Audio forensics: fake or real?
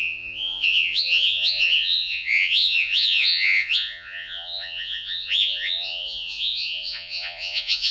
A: fake